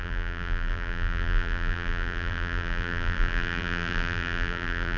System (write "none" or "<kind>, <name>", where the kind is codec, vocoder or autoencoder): vocoder, BigVGAN v2